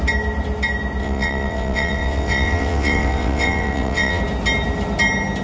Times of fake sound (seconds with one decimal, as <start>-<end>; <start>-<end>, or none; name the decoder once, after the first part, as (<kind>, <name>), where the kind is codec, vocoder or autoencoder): 1.0-4.2 (vocoder, WaveNeXt)